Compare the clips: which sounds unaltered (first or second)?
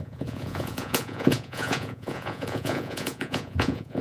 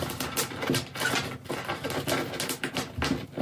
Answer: second